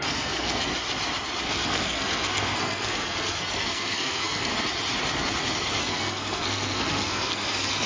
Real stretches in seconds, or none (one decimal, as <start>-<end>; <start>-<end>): 0.7-1.4; 4.5-5.8

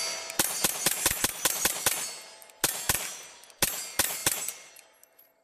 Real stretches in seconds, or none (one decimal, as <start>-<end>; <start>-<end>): 0.0-5.4